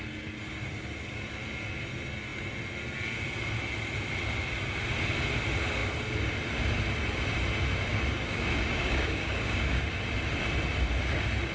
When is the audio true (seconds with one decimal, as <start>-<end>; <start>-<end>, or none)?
0.0-7.9; 9.9-11.5